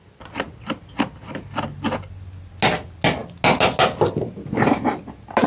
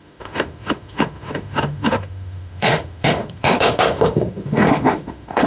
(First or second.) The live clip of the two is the first